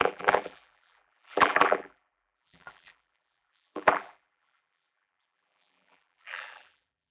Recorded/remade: remade